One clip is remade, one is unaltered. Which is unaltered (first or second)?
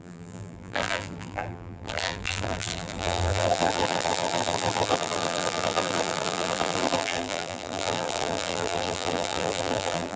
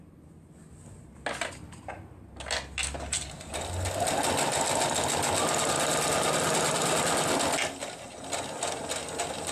second